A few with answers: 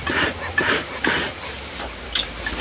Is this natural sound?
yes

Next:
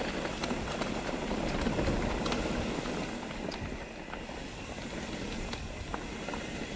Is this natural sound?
yes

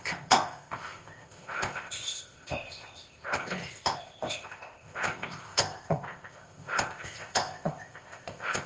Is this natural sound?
no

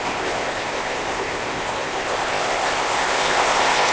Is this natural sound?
no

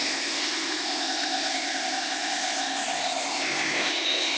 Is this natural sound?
no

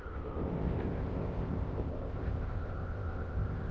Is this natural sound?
no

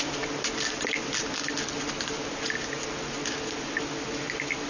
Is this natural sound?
yes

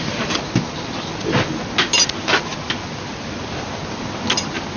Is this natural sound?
yes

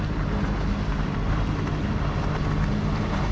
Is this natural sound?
yes